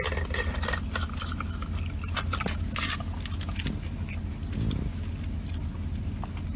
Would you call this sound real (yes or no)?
yes